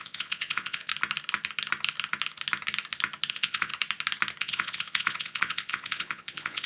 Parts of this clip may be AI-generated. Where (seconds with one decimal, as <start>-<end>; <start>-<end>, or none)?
0.0-0.9; 3.3-3.7; 4.4-6.7

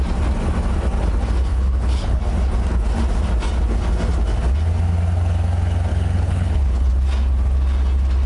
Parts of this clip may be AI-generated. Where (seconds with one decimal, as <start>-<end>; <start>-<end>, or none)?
1.5-2.2; 5.9-6.9

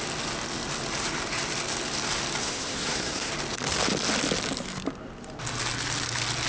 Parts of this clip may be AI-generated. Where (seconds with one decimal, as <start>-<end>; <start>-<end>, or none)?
2.4-3.3

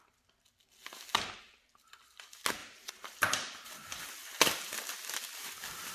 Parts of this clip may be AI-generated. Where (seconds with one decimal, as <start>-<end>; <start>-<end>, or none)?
2.6-4.7

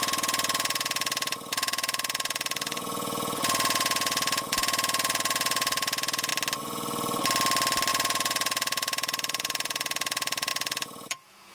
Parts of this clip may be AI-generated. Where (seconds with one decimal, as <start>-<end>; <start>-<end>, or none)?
0.0-6.3; 7.9-11.5

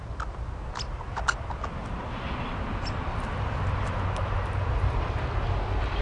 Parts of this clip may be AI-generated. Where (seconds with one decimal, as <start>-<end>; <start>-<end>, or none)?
3.1-3.6

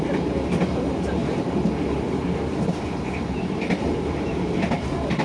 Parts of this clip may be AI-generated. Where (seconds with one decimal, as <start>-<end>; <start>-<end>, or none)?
1.2-4.3